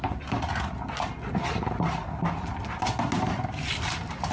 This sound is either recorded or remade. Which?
recorded